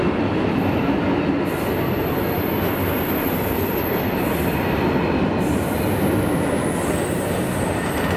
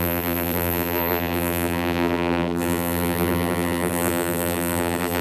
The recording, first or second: first